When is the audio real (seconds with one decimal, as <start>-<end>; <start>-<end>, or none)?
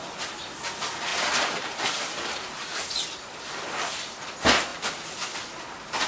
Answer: 0.0-1.1; 3.5-4.7; 5.4-6.1